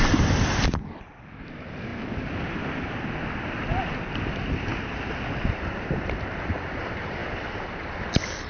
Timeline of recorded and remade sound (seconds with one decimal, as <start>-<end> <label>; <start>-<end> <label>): 0.0-8.5 recorded